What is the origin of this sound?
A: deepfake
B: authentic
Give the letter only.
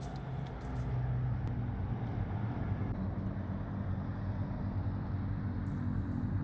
B